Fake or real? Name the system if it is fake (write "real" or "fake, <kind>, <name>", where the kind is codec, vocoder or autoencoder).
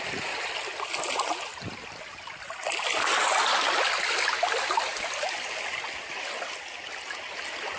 real